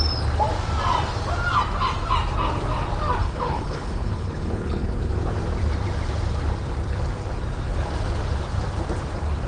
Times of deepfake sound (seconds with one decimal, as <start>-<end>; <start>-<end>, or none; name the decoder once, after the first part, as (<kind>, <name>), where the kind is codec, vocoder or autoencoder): 3.2-5.1 (codec, HILCodec)